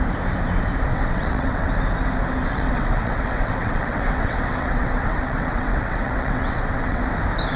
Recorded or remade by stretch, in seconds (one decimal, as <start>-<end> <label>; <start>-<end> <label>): 0.0-0.9 recorded; 0.9-1.7 remade; 1.7-2.4 recorded; 2.4-7.0 remade; 7.0-7.6 recorded